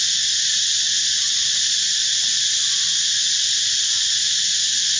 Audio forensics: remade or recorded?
recorded